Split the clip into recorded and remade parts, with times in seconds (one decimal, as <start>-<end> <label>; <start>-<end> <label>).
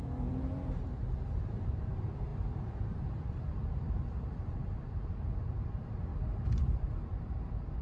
0.0-6.1 remade; 6.1-6.7 recorded; 6.7-7.8 remade